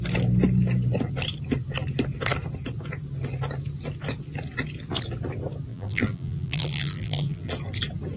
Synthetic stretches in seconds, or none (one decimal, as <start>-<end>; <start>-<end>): 5.7-7.5